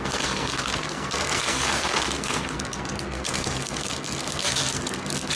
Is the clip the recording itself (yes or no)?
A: no